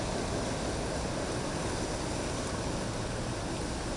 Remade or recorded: recorded